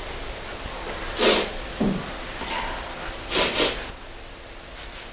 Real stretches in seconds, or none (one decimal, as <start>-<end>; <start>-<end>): 0.0-5.1